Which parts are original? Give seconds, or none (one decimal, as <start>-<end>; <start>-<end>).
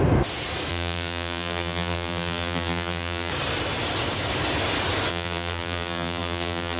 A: 0.0-0.7; 3.3-5.1